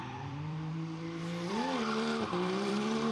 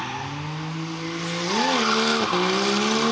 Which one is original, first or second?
second